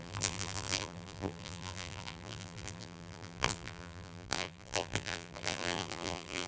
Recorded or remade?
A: remade